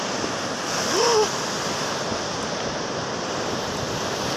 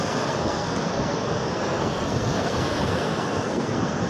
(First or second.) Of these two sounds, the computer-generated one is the second